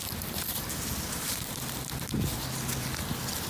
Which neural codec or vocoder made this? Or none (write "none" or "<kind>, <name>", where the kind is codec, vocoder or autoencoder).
none